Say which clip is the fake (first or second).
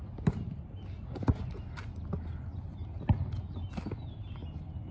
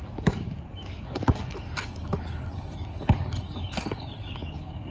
second